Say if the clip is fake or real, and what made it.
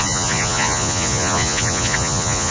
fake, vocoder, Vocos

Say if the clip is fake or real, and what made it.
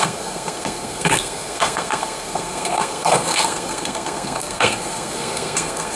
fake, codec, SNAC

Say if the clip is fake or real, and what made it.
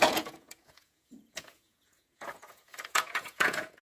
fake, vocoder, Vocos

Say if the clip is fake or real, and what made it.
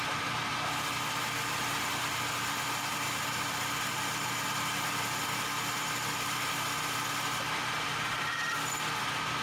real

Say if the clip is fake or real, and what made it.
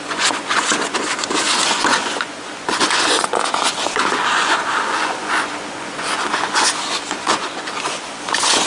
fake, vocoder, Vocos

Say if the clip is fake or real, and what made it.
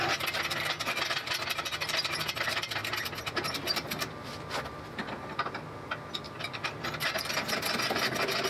real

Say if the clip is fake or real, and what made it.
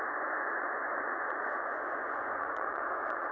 fake, vocoder, Vocos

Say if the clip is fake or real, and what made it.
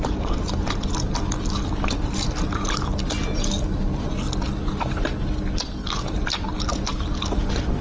real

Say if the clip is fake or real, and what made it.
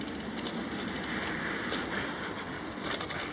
real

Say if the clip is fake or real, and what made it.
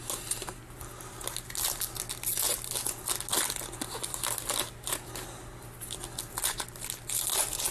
real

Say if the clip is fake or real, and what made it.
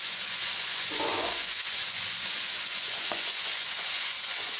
fake, vocoder, Vocos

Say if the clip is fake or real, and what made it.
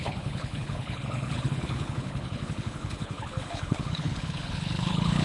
fake, codec, HILCodec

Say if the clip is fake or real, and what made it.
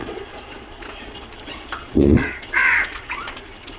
fake, vocoder, Vocos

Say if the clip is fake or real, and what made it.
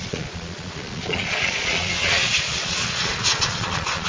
fake, vocoder, Vocos